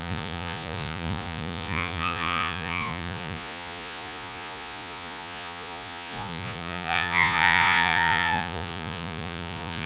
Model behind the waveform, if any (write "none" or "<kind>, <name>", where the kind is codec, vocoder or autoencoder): vocoder, Vocos